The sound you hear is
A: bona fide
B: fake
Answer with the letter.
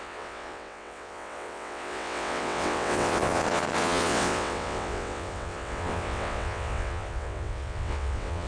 B